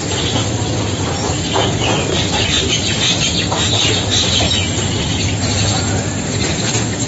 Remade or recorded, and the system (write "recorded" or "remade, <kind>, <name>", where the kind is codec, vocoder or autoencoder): recorded